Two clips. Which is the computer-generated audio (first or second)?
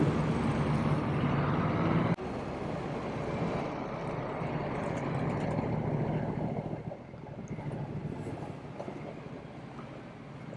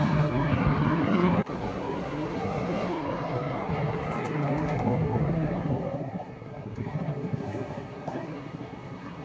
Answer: second